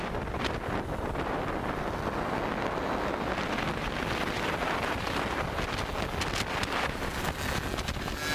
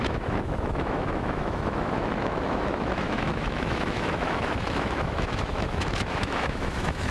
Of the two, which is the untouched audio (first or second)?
first